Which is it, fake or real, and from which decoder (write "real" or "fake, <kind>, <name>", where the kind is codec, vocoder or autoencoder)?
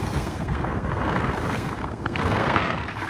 fake, codec, SNAC